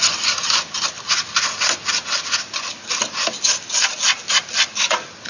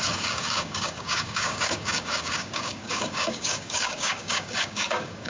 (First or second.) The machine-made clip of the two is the second